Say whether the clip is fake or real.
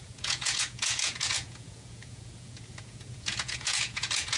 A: fake